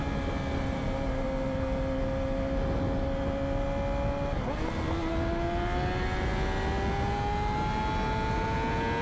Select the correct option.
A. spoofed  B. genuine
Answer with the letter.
B